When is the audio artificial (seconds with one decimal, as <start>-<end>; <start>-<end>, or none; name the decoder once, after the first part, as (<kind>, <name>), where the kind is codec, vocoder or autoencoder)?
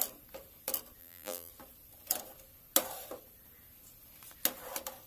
1.0-1.5 (vocoder, BigVGAN v2)